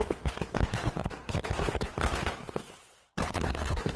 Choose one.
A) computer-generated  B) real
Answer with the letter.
A